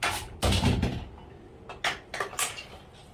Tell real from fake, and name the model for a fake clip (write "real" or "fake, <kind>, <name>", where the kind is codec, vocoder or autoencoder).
real